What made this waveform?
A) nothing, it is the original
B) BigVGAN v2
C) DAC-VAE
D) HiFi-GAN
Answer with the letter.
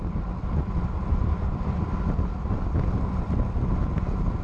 A